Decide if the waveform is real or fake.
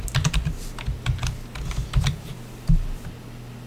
real